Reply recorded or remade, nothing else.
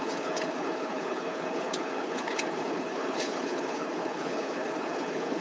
remade